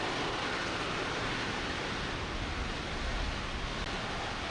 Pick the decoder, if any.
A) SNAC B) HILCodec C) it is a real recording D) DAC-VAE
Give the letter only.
C